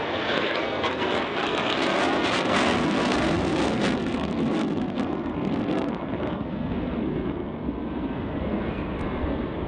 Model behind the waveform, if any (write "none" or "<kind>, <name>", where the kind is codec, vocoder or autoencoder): codec, SNAC